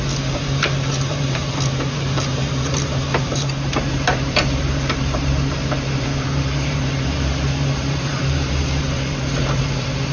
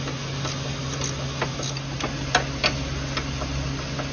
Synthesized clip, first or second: first